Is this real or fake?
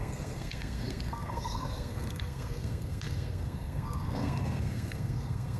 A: fake